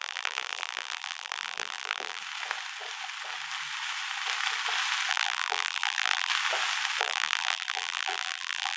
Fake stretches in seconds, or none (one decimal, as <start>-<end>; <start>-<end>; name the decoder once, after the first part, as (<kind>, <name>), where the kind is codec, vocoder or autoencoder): 0.0-2.2 (vocoder, BigVGAN v2); 5.1-6.3; 7.0-8.8